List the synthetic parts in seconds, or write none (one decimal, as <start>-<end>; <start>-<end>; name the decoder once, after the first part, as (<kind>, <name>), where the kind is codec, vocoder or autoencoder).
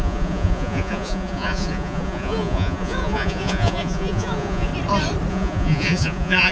0.0-4.7 (vocoder, Vocos); 5.3-6.5